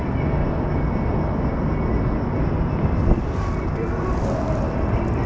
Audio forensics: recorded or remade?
recorded